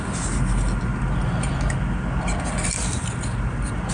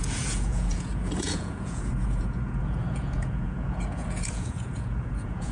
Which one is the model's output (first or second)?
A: second